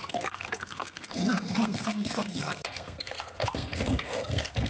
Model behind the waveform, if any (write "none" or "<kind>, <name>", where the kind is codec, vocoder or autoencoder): codec, SNAC